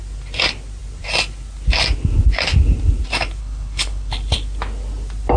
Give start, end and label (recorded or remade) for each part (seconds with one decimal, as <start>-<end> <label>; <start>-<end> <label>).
0.0-3.4 recorded; 3.4-4.1 remade; 4.1-5.4 recorded